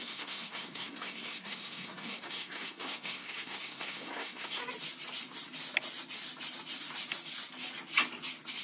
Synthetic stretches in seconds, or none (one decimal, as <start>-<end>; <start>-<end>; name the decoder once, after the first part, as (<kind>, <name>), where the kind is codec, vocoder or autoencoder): 0.0-4.6 (codec, SNAC)